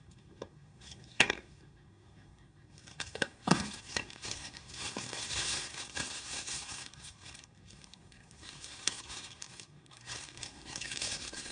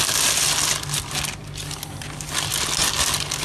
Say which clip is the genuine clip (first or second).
second